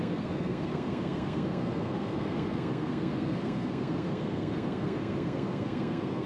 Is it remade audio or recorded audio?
remade